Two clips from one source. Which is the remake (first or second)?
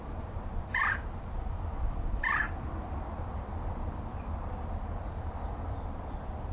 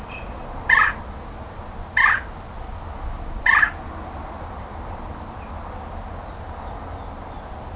first